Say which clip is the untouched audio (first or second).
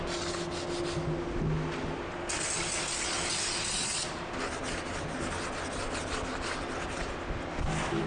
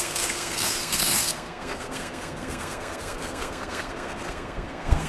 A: first